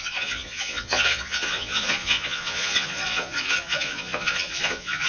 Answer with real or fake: fake